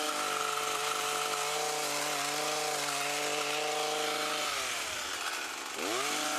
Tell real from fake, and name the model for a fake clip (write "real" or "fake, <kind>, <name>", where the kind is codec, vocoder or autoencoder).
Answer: real